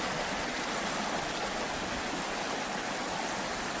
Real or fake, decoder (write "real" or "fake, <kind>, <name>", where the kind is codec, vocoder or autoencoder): real